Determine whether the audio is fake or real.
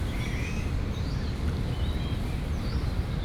real